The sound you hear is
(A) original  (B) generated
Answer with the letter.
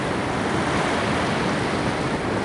A